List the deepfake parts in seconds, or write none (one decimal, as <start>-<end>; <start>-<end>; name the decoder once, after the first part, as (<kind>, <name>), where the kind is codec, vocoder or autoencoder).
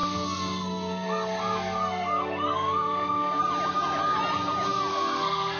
0.0-3.4 (codec, SNAC); 4.9-5.6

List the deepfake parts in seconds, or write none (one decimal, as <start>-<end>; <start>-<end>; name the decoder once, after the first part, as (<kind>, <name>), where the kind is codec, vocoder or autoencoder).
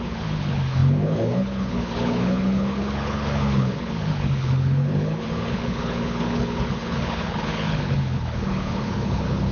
0.0-9.5 (codec, HILCodec)